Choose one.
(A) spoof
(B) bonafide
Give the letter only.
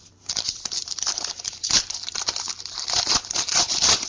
A